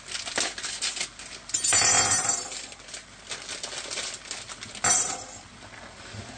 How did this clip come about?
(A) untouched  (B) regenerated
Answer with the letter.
A